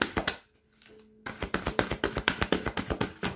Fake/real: real